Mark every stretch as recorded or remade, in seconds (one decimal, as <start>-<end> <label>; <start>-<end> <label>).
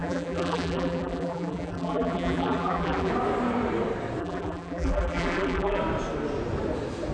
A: 0.0-3.1 remade; 3.1-4.2 recorded; 4.2-5.8 remade; 5.8-7.1 recorded